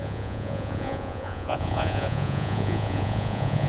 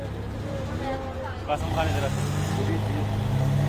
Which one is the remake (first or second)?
first